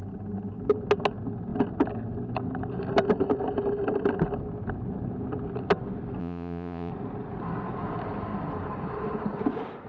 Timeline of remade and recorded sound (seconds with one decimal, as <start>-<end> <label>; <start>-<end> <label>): 0.0-6.2 recorded; 6.2-6.9 remade; 6.9-9.9 recorded